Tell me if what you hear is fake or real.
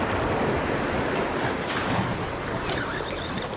real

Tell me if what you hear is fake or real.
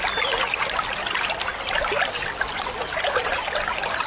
real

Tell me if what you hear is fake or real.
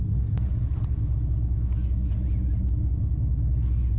real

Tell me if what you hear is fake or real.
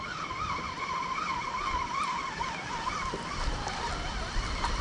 real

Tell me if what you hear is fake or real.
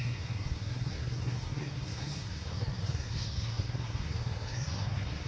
fake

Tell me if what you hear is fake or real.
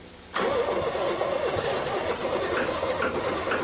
real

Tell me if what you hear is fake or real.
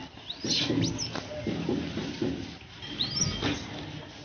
real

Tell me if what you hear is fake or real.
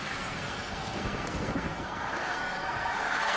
fake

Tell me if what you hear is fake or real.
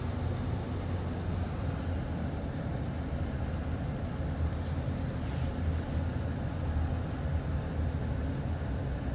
real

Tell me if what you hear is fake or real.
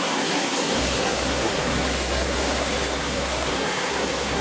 fake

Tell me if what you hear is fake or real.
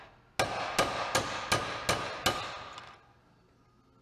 real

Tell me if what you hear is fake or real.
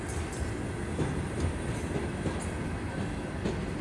real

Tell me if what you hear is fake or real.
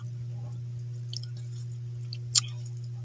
real